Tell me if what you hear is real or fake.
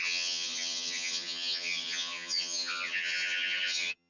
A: fake